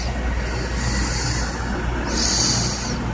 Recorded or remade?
recorded